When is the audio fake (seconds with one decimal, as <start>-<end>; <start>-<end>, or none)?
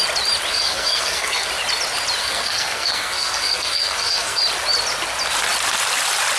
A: 0.5-1.5; 2.2-4.4